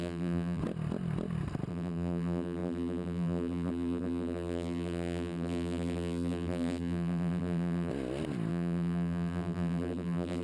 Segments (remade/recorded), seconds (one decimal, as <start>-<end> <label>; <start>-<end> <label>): 0.0-0.6 remade; 0.6-1.7 recorded; 1.7-7.9 remade; 7.9-8.5 recorded; 8.5-10.4 remade